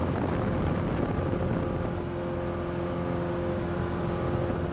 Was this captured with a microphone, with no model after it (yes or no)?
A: yes